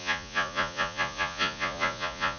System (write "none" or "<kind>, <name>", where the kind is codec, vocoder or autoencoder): vocoder, Vocos